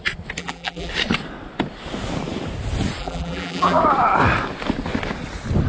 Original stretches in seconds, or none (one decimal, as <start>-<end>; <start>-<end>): 0.0-0.4; 0.9-3.0; 3.8-5.7